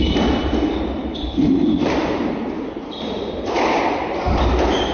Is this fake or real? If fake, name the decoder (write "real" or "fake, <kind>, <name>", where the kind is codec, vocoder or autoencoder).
fake, vocoder, BigVGAN v2